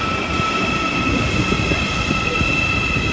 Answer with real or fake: real